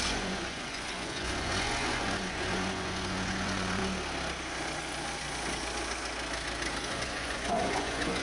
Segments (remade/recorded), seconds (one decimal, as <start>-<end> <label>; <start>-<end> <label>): 0.0-3.8 remade; 3.8-6.9 recorded; 6.9-8.2 remade